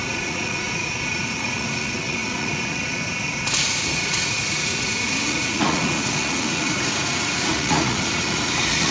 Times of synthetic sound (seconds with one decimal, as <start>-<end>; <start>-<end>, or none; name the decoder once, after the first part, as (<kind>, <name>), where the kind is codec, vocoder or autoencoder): 0.0-8.9 (vocoder, Vocos)